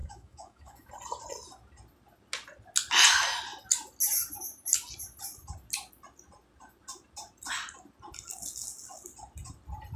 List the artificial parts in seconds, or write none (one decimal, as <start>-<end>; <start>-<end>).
0.0-0.9